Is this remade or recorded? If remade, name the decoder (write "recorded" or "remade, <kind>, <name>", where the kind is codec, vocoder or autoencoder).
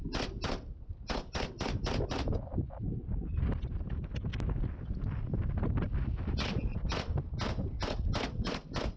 recorded